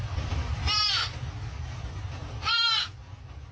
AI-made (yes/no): no